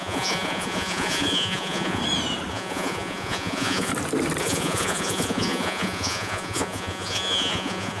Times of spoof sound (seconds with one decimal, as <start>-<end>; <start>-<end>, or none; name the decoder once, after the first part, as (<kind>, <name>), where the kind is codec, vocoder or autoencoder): 0.0-2.0 (vocoder, Vocos); 2.5-3.9; 4.4-8.0

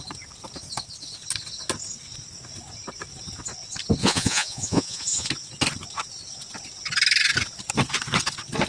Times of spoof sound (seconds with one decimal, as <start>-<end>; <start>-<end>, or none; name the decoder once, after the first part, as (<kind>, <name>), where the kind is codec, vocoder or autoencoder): 4.0-5.3 (vocoder, Vocos)